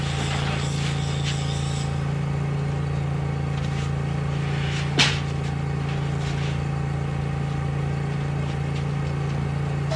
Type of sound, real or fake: real